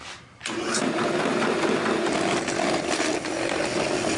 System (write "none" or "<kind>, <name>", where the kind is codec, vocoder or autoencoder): none